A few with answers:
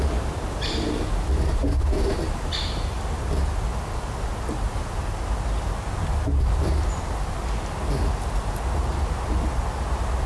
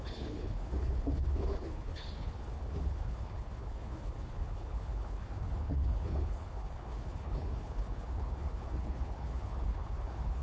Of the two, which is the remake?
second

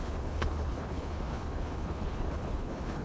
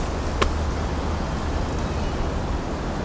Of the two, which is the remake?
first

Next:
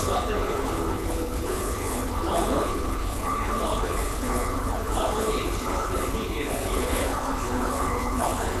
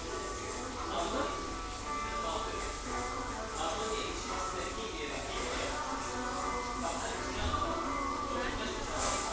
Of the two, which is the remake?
first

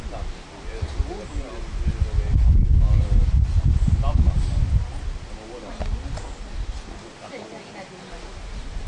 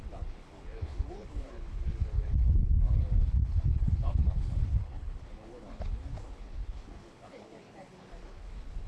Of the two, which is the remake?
second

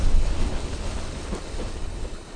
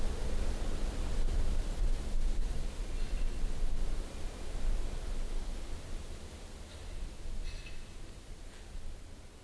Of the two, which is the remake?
first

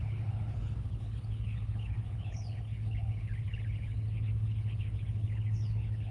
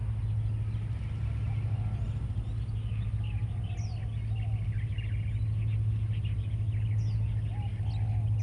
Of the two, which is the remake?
first